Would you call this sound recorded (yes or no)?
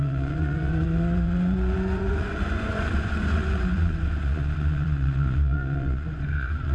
no